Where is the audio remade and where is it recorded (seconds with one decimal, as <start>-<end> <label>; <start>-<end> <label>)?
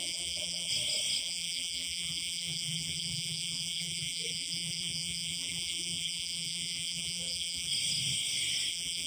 0.0-0.7 remade; 0.7-1.2 recorded; 1.2-7.7 remade; 7.7-8.7 recorded; 8.7-9.1 remade